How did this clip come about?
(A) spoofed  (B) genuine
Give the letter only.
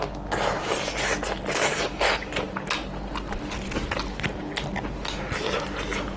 B